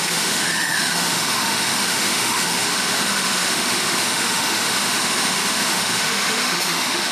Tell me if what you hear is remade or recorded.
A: remade